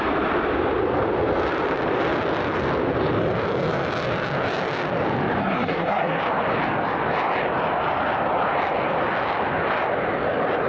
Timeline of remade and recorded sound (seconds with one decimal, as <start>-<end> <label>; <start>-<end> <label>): 0.0-5.4 recorded; 5.4-6.2 remade; 6.2-10.7 recorded